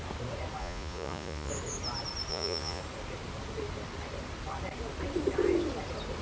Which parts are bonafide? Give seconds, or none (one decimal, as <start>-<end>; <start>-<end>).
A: 0.0-0.6; 1.5-2.3; 2.8-6.2